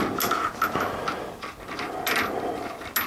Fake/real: real